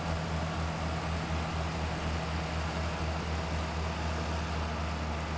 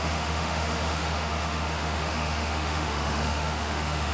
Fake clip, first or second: second